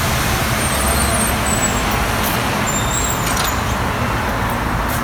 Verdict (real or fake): real